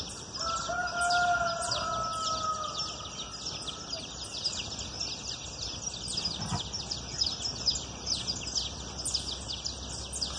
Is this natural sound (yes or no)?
yes